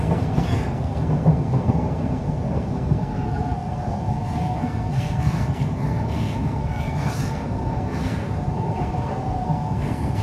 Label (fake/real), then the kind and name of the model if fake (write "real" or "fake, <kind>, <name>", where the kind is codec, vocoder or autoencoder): fake, codec, SNAC